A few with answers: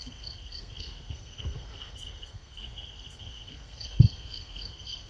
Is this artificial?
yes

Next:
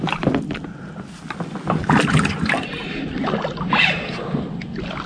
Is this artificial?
no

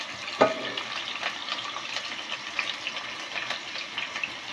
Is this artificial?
no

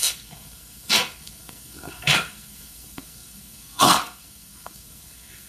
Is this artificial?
yes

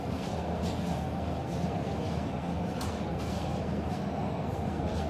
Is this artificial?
yes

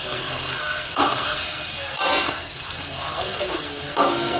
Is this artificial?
yes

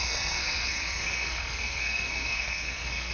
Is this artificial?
yes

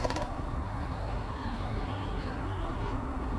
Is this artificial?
yes